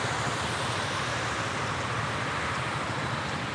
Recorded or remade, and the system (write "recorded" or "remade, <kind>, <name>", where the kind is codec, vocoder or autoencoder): recorded